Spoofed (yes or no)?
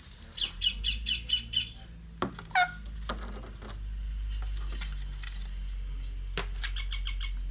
no